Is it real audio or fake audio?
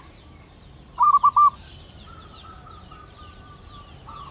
real